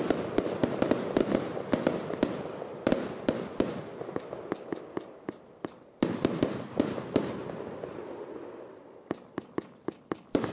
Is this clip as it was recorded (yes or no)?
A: yes